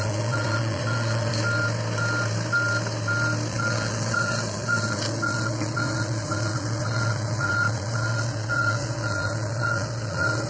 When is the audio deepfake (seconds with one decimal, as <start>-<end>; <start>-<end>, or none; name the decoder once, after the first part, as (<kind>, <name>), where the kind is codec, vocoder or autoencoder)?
0.0-1.3 (vocoder, Vocos); 3.5-10.5